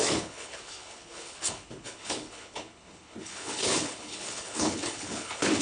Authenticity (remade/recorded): remade